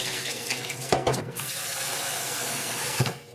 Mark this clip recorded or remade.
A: remade